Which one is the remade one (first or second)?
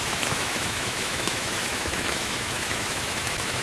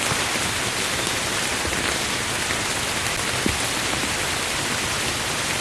first